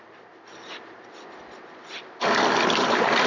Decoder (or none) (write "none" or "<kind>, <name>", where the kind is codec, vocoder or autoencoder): none